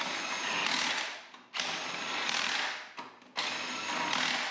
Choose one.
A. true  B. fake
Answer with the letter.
A